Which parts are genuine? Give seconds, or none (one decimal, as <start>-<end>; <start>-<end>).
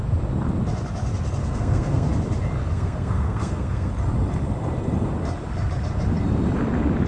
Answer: 0.0-1.4; 2.1-2.7; 3.9-7.1